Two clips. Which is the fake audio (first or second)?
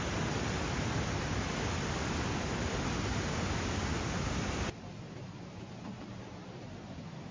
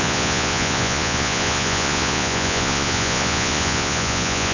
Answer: second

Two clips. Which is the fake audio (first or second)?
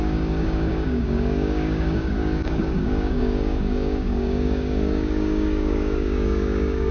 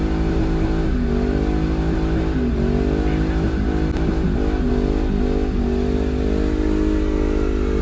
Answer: first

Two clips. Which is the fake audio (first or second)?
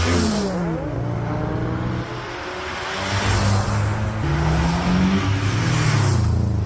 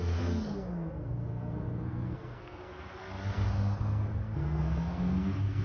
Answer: second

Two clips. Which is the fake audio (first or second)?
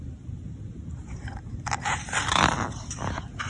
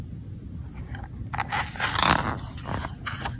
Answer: first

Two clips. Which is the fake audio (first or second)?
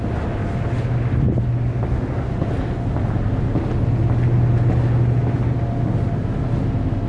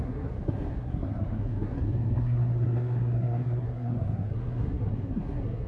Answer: second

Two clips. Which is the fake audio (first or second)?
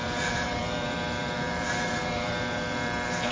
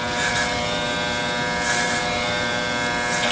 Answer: first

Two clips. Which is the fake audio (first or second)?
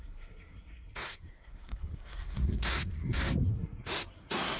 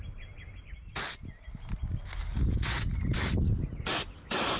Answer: first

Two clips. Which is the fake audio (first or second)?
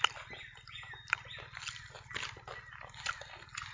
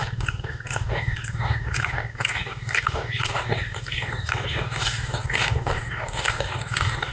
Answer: second